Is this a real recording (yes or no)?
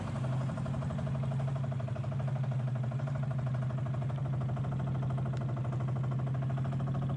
yes